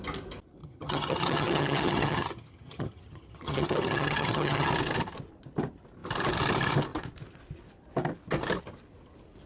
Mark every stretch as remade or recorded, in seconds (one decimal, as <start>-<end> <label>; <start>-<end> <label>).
0.0-0.6 recorded; 0.6-4.7 remade; 4.7-9.5 recorded